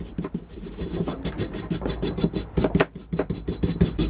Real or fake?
real